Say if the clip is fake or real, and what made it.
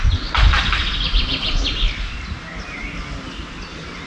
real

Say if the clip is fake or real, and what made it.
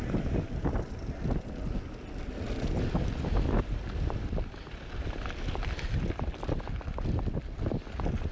real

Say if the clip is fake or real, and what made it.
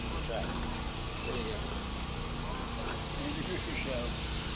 real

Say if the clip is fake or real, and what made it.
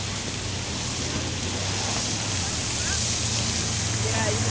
real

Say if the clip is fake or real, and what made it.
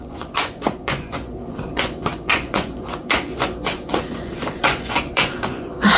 fake, vocoder, Vocos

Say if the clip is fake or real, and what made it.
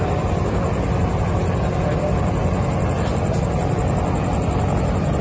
real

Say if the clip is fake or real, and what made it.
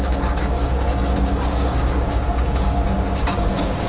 fake, codec, DAC